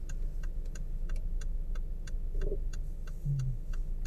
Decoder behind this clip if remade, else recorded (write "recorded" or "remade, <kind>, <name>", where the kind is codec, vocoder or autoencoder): recorded